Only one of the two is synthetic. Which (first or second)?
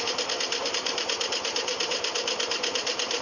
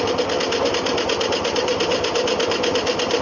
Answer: first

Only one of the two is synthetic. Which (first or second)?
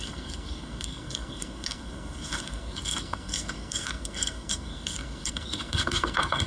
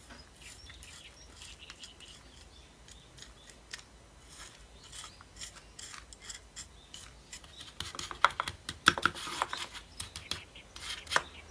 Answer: first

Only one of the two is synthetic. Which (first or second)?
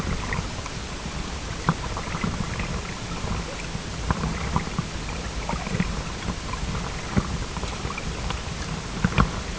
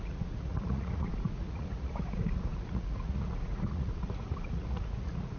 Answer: second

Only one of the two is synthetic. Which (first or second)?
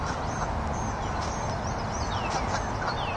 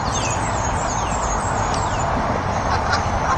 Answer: second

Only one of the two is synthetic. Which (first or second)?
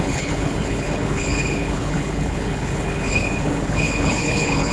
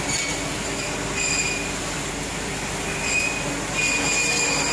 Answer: first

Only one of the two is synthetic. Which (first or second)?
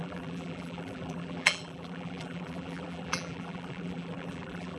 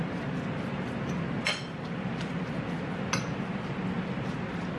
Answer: first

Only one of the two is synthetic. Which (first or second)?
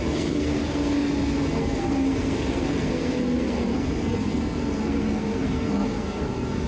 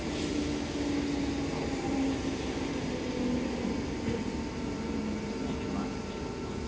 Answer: first